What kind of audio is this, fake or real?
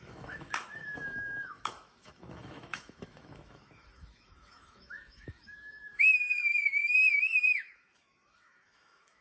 fake